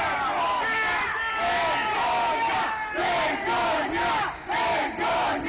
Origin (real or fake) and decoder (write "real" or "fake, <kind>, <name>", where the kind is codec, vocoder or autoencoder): real